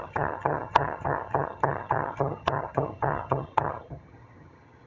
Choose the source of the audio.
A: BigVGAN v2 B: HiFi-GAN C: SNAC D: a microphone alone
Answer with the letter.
B